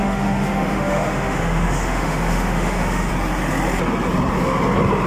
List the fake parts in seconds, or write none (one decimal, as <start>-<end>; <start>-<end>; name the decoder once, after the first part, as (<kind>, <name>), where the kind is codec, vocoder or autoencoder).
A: 0.0-3.1 (autoencoder, DAC-VAE)